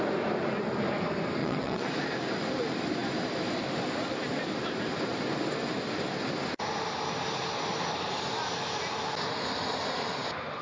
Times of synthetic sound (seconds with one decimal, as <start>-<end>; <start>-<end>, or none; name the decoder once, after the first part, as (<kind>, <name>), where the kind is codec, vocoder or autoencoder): 1.4-1.9 (vocoder, WaveNeXt)